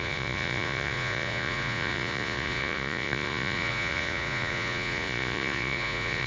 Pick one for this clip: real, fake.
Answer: fake